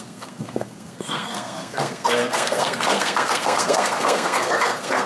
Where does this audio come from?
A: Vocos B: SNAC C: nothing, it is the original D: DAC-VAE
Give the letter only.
B